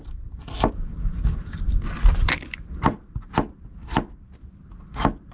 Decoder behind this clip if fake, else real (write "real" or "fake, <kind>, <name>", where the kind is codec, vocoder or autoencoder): real